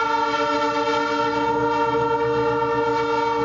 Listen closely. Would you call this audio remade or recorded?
recorded